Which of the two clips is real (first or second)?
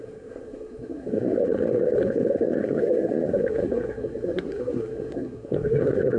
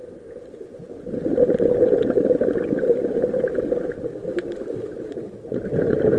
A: second